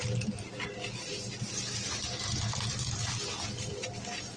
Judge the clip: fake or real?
real